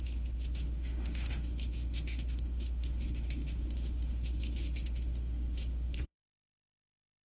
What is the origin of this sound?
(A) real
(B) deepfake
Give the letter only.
B